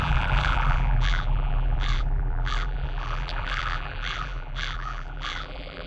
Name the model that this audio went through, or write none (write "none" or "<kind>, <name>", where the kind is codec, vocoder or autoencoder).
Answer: vocoder, BigVGAN v2